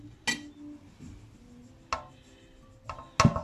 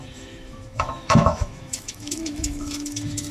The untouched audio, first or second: first